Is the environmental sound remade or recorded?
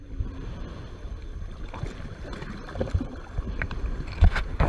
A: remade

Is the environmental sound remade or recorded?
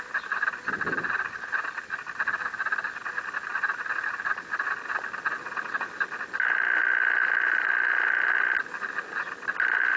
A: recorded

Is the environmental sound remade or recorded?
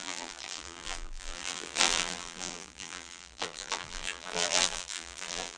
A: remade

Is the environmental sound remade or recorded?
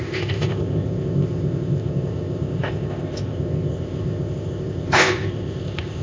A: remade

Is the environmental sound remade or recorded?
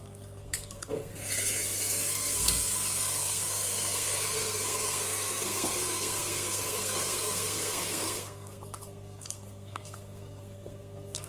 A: remade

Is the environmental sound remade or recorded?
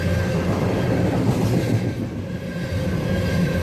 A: recorded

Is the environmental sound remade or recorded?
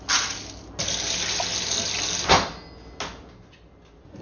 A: recorded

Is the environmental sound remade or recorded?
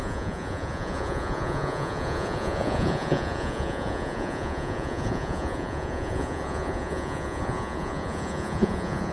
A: remade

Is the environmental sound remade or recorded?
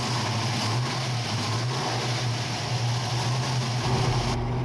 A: recorded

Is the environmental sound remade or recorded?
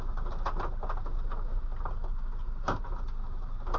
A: recorded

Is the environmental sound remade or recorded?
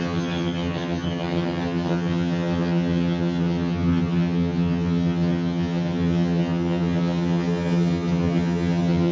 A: remade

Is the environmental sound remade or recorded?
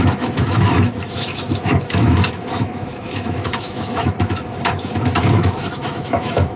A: remade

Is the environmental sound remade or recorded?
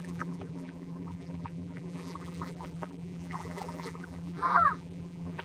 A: remade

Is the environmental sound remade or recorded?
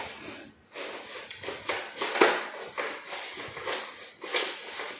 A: recorded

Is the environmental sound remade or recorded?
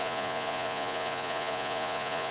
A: remade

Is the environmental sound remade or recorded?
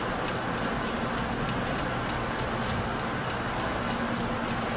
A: recorded